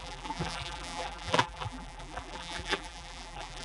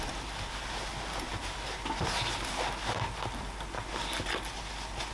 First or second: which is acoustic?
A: second